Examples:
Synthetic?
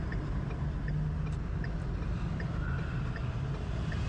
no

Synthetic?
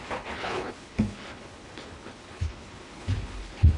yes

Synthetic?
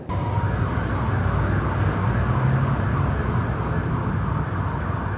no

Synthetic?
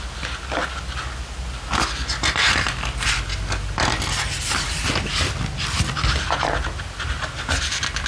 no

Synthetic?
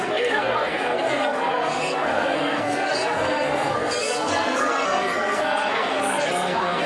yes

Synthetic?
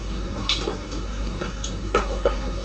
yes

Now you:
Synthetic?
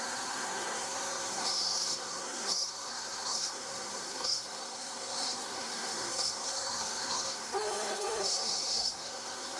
yes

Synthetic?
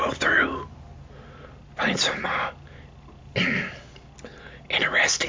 no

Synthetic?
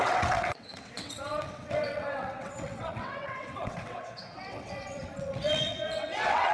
yes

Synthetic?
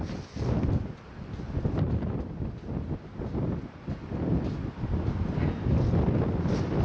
no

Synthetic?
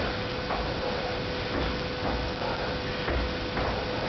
no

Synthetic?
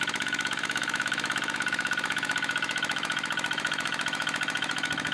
yes